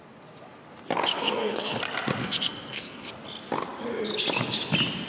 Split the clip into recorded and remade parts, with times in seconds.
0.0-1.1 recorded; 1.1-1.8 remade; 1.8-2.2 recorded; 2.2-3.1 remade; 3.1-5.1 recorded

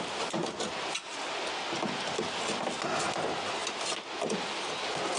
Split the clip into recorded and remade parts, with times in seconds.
0.0-5.2 recorded

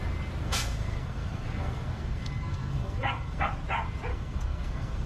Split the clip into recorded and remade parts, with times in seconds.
0.0-0.4 recorded; 0.4-3.5 remade; 3.5-4.1 recorded; 4.1-5.1 remade

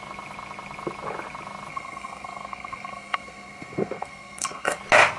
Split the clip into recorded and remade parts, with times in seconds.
0.0-1.7 recorded; 1.7-4.8 remade; 4.8-5.2 recorded

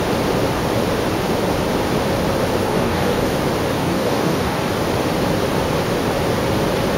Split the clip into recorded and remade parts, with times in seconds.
0.0-2.6 recorded; 2.6-3.4 remade; 3.4-3.8 recorded; 3.8-4.7 remade; 4.7-7.0 recorded